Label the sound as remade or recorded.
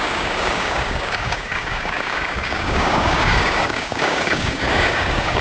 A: remade